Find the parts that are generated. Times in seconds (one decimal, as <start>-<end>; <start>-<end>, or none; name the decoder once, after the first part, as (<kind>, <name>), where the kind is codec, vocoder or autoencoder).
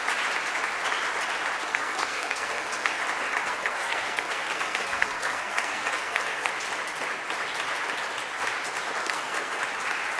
1.7-3.0 (codec, SNAC); 3.4-6.5; 9.0-9.6